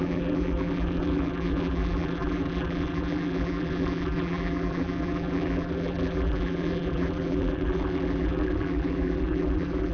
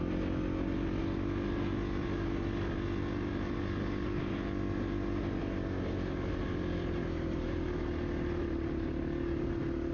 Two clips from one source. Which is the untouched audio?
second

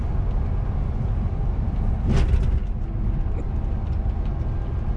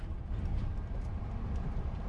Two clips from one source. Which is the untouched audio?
first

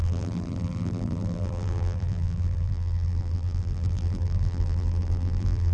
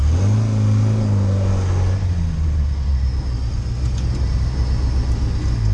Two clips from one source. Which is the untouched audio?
second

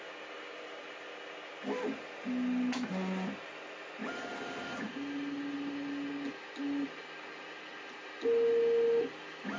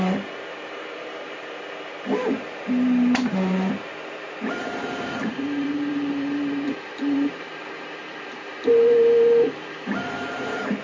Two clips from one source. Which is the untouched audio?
first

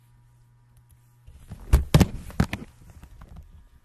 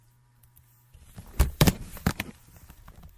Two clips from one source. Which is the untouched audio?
first